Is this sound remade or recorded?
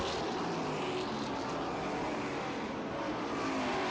recorded